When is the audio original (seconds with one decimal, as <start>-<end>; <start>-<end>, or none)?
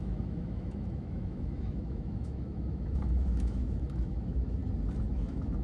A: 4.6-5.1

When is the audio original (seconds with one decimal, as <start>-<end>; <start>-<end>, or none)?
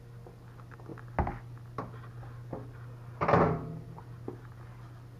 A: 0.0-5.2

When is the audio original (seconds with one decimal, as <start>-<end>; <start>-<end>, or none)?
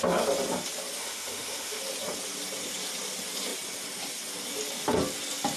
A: 0.0-1.0; 1.8-5.6